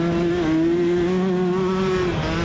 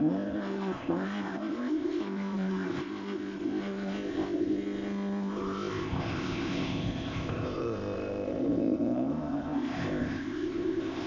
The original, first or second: first